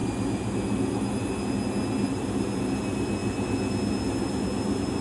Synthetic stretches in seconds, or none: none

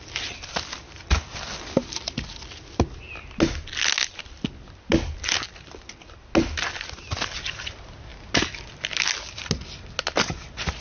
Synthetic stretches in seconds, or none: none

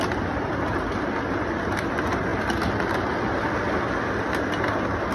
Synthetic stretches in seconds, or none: none